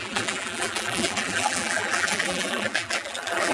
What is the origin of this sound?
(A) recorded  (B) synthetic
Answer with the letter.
B